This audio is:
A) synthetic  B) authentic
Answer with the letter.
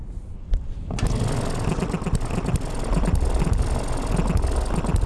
B